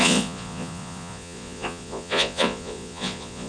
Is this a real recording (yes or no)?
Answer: no